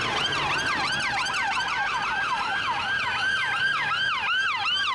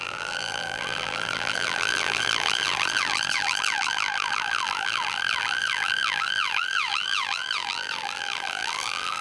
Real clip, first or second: first